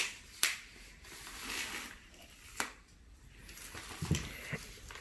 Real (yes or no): yes